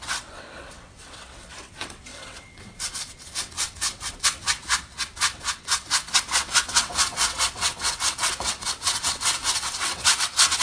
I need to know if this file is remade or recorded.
remade